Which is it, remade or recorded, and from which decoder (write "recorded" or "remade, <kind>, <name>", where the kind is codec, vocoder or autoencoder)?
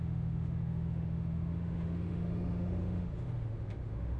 remade, autoencoder, DAC-VAE